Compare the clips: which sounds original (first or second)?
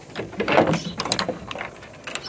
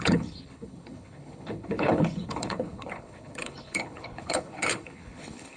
first